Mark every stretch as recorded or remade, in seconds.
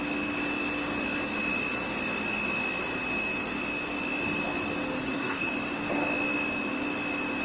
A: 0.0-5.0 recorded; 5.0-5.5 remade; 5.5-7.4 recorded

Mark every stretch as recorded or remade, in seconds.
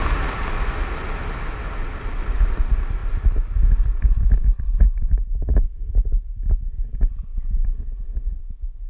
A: 0.0-8.9 recorded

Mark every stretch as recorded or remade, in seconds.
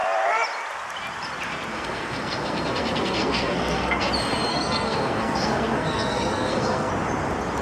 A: 0.0-1.7 recorded; 1.7-4.1 remade; 4.1-4.5 recorded; 4.5-6.9 remade; 6.9-7.6 recorded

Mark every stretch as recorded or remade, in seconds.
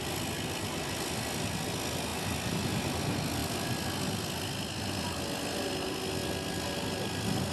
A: 0.0-7.5 recorded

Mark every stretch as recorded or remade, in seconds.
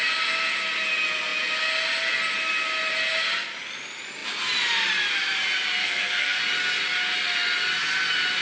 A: 0.0-5.8 recorded; 5.8-6.4 remade; 6.4-8.4 recorded